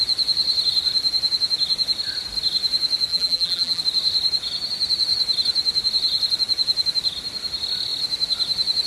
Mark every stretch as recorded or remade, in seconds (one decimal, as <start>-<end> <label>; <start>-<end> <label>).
0.0-3.1 recorded; 3.1-3.8 remade; 3.8-8.9 recorded